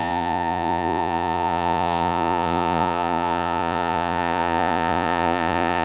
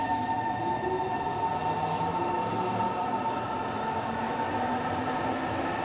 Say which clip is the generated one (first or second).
first